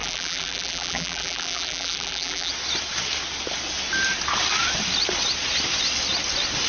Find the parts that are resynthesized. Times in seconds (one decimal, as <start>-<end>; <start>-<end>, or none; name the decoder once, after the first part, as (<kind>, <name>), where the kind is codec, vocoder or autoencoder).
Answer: 0.0-2.5 (vocoder, BigVGAN v2)